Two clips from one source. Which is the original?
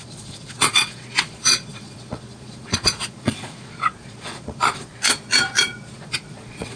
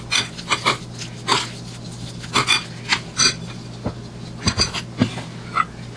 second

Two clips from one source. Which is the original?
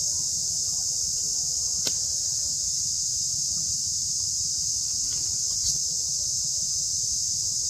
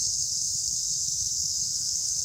first